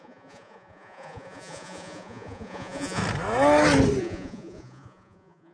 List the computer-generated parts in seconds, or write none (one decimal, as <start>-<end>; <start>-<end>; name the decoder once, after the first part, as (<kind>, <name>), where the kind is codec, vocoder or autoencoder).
0.0-3.0 (vocoder, Vocos); 4.0-5.5